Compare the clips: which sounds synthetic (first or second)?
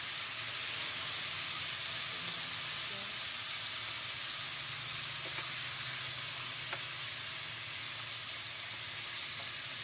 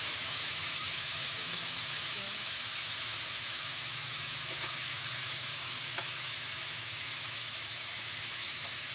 second